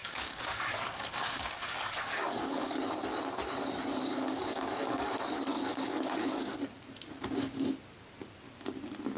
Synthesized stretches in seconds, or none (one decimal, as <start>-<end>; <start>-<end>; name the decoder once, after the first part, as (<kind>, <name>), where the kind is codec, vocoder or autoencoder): 0.0-2.8 (codec, DAC); 4.0-5.1; 5.5-6.6